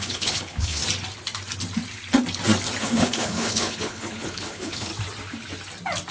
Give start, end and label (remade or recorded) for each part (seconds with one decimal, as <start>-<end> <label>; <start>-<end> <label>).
0.0-0.8 remade; 0.8-2.8 recorded; 2.8-4.9 remade; 4.9-6.1 recorded